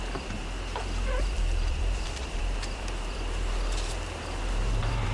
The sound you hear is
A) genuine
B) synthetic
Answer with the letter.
B